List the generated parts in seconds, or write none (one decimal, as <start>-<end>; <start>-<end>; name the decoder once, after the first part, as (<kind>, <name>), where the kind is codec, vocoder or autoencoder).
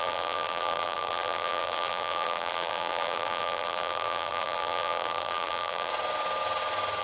0.0-5.9 (vocoder, BigVGAN v2)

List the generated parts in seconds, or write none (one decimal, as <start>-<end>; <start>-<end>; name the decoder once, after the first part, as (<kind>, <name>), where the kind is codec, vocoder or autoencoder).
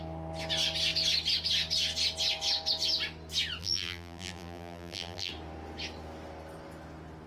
3.6-5.3 (vocoder, BigVGAN v2)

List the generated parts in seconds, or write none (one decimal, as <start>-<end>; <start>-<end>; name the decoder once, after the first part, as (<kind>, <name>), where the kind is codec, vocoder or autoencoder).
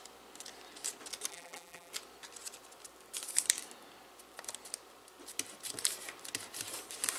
1.3-1.9 (vocoder, BigVGAN v2)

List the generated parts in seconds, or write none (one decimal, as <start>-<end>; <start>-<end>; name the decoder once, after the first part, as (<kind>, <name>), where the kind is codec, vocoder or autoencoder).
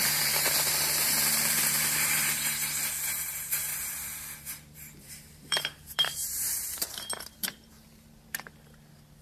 0.0-2.7 (vocoder, BigVGAN v2); 3.7-8.5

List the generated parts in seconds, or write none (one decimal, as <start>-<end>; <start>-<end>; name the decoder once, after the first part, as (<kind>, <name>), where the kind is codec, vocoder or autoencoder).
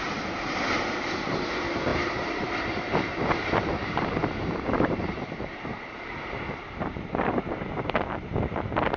0.0-9.0 (vocoder, BigVGAN v2)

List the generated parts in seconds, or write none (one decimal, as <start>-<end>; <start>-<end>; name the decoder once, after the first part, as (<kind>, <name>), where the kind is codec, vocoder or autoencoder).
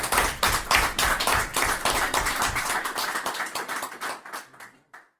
none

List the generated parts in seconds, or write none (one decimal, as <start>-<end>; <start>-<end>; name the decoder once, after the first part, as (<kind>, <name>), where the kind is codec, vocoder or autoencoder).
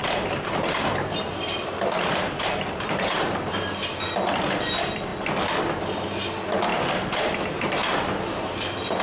0.0-3.6 (vocoder, BigVGAN v2); 5.1-5.6; 6.7-9.0